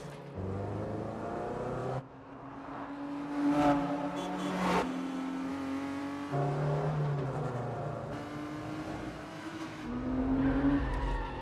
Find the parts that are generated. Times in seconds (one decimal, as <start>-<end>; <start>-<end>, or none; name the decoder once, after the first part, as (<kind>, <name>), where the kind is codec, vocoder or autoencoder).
1.8-2.3 (autoencoder, DAC-VAE); 5.5-6.0; 9.3-9.9